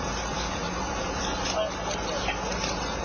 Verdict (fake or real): real